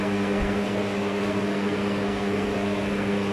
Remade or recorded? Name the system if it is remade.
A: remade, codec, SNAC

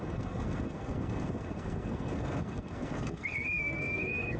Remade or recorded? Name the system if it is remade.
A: remade, codec, SNAC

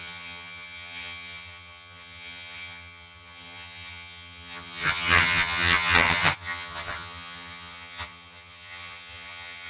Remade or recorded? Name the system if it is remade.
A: remade, vocoder, HiFi-GAN